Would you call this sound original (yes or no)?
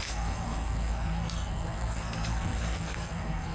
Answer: no